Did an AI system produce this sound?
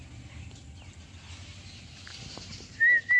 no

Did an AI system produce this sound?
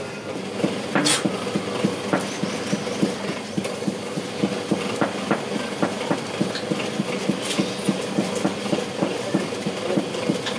no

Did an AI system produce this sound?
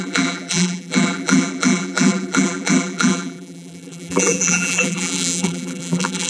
yes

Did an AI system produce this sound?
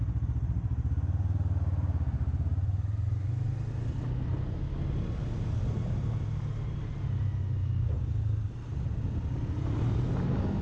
no